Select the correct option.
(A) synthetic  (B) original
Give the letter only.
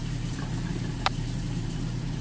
A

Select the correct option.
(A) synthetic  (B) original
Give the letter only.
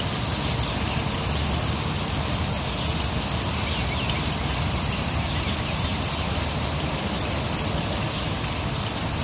B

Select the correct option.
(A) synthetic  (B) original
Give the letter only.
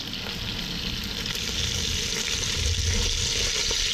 B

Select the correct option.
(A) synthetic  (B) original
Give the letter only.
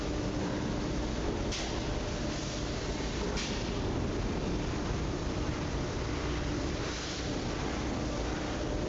B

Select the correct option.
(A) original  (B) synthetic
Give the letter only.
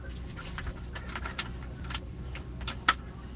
A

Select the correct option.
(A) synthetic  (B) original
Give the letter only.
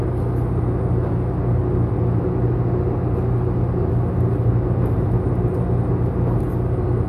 B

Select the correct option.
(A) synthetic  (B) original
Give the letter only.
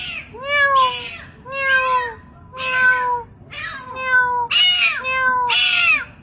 B